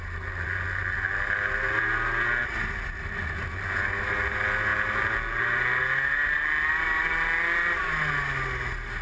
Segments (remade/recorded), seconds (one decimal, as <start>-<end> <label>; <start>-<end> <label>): 0.0-0.8 recorded; 0.8-2.4 remade; 2.4-9.0 recorded